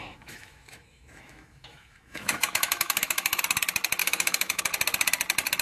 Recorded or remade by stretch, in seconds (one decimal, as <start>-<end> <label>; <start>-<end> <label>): 0.0-3.4 remade; 3.4-4.0 recorded; 4.0-4.6 remade; 4.6-5.6 recorded